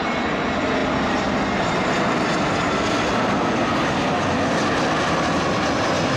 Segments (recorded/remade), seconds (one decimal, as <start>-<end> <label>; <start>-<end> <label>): 0.0-6.2 recorded